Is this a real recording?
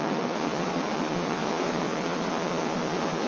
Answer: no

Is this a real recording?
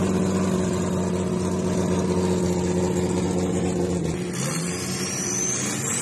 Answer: yes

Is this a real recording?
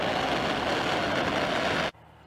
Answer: yes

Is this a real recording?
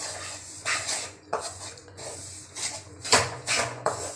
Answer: no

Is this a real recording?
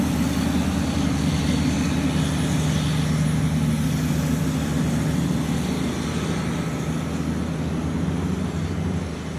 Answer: yes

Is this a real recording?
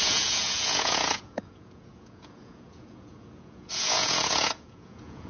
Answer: no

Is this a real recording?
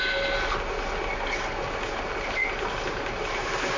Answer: yes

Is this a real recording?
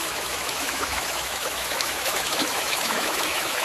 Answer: no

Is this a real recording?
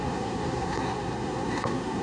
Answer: no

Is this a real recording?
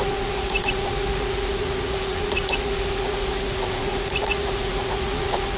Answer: no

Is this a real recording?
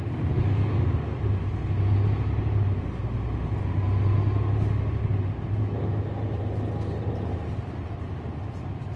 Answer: yes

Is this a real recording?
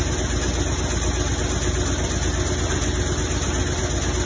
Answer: yes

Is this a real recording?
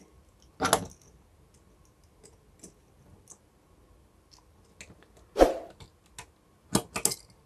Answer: yes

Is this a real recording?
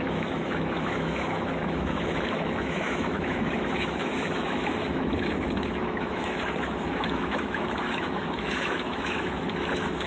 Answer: no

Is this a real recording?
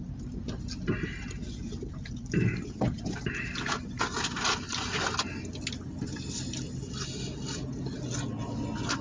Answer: yes